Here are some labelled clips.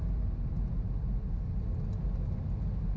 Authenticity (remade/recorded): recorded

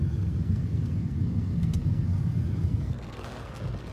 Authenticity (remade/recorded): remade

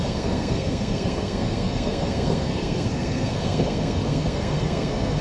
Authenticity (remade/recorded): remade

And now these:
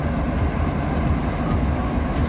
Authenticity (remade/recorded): recorded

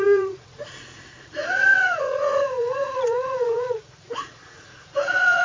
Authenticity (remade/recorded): remade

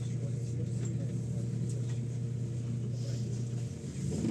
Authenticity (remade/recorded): recorded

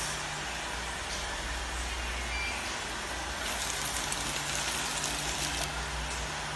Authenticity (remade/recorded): recorded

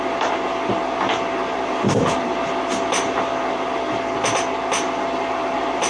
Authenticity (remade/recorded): recorded